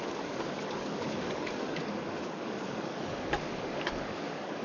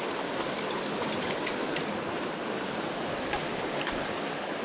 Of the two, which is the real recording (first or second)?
second